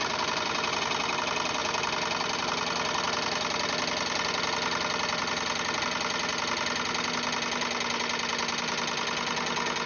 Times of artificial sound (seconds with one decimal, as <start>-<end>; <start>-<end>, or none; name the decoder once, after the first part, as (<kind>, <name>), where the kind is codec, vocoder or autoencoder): none